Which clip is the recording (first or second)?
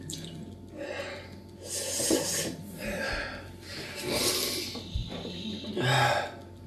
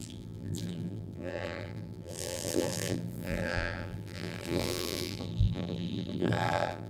first